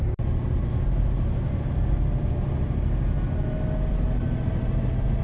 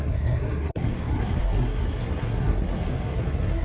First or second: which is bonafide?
first